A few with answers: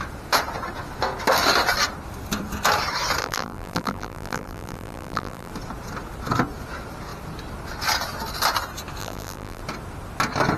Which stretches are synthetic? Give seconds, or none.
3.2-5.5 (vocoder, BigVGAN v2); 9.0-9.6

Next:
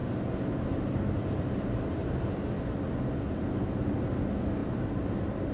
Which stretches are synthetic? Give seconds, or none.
none

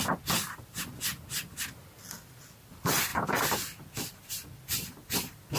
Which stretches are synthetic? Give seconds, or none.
0.0-1.1 (vocoder, BigVGAN v2); 2.2-5.6

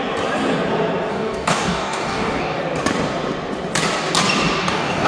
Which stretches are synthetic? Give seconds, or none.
1.1-2.6 (codec, DAC); 4.6-5.1

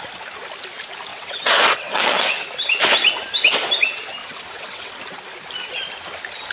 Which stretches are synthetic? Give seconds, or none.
1.1-2.3 (vocoder, WaveNeXt); 4.2-4.9

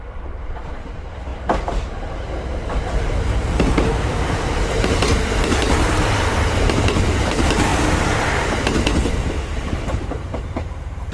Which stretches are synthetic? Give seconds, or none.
0.0-11.1 (vocoder, BigVGAN v2)

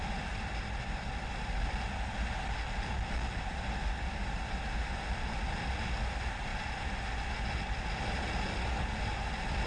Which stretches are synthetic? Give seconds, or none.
none